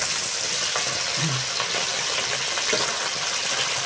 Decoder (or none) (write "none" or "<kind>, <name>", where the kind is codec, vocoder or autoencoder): none